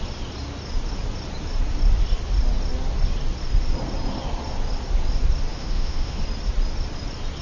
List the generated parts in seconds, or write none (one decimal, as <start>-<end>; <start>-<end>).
5.5-6.2